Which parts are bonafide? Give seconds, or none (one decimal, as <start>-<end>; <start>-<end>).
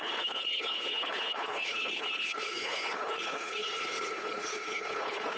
none